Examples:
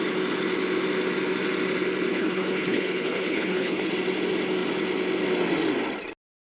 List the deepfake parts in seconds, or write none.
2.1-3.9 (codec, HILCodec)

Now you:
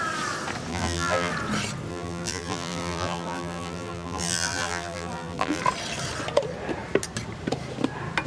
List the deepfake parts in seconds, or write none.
0.7-1.3 (vocoder, BigVGAN v2); 1.9-5.6

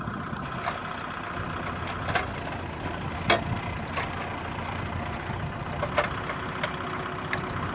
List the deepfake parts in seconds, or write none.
none

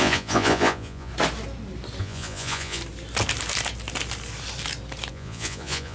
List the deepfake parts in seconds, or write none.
0.0-1.1 (vocoder, Vocos); 2.0-2.8; 5.1-5.9

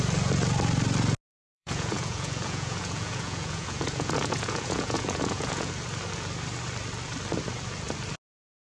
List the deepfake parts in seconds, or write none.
1.3-5.7 (vocoder, Vocos)

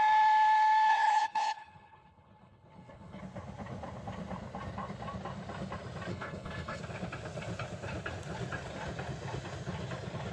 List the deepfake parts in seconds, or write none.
0.9-3.2 (codec, HILCodec); 6.1-6.8